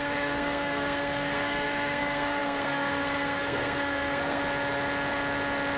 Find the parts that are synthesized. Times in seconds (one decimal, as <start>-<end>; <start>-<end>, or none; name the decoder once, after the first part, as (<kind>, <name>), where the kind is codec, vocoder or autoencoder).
0.0-4.4 (codec, SNAC)